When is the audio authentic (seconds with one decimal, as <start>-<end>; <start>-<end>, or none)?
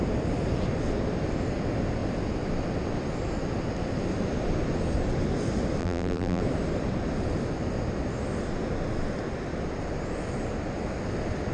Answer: 0.0-5.8; 6.4-11.5